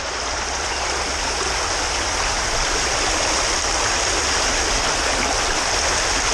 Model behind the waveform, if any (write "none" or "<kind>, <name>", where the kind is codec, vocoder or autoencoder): none